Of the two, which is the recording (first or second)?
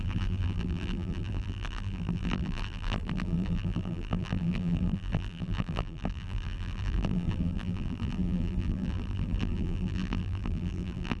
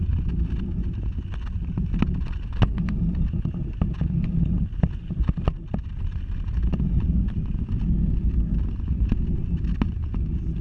second